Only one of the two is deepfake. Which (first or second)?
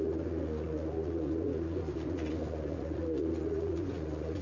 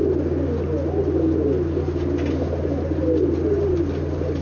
first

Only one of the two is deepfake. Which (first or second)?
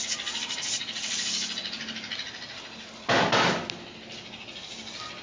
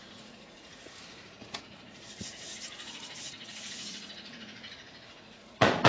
second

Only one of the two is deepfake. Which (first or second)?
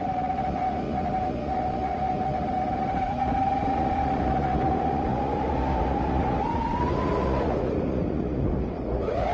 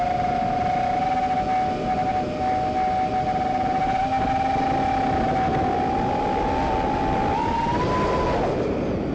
first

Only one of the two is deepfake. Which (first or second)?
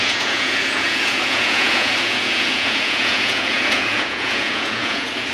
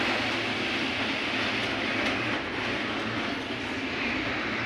first